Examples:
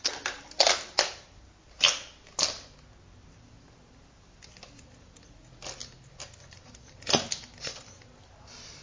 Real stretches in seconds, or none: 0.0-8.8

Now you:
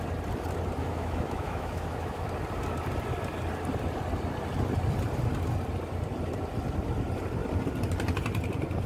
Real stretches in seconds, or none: 0.0-0.8; 2.3-8.9

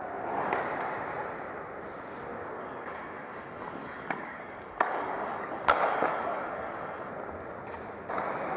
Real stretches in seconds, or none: 0.0-2.6; 7.1-8.6

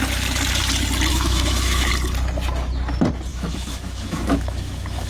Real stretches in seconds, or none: 0.0-1.1; 1.9-3.3

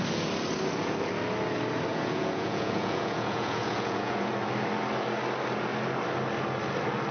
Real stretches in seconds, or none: 0.0-1.9; 4.3-7.1

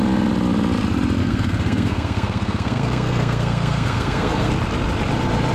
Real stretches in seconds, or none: 0.0-1.2; 4.5-5.5